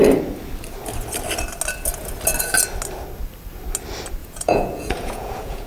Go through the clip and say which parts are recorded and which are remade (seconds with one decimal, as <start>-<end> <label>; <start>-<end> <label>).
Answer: 0.0-4.2 recorded; 4.2-5.7 remade